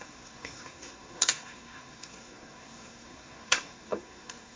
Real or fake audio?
fake